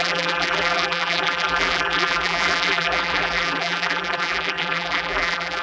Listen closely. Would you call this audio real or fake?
fake